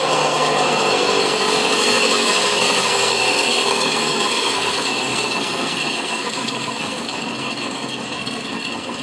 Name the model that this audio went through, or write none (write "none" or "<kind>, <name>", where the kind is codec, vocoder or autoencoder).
codec, SNAC